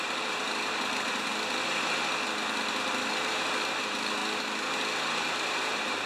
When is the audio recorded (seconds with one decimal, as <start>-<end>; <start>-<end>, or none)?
1.3-2.9; 4.2-5.3